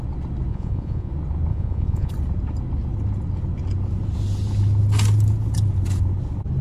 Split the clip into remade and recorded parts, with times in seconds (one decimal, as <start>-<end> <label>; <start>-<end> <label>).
0.0-0.5 recorded; 0.5-1.1 remade; 1.1-1.5 recorded; 1.5-2.1 remade; 2.1-6.6 recorded